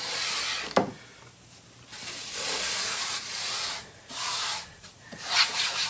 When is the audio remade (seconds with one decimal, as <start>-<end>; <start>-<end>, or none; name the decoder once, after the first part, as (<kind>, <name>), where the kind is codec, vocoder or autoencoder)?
2.2-5.9 (vocoder, Vocos)